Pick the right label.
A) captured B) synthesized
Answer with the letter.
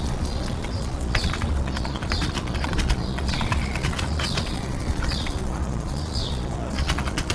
B